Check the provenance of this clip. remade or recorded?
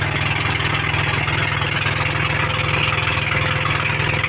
recorded